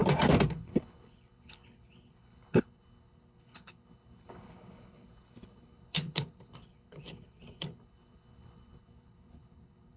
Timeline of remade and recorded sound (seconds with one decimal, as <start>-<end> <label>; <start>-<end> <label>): 0.0-0.5 recorded; 0.5-10.0 remade